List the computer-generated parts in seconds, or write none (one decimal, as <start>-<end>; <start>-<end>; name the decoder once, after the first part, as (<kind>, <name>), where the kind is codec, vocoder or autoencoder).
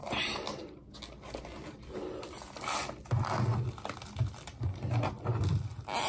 none